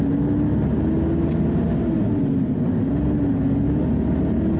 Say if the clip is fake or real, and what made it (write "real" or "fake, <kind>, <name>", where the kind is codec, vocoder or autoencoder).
real